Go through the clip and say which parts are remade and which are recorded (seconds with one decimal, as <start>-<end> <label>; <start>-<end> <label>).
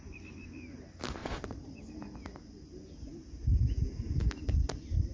0.0-1.2 recorded; 1.2-1.7 remade; 1.7-5.1 recorded